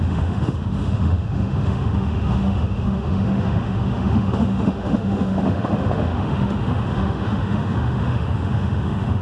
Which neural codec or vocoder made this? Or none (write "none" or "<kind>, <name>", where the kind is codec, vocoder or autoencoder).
autoencoder, DAC-VAE